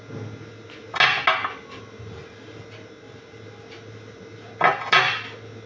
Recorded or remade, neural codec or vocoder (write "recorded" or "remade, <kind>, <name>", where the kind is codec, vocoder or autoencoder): recorded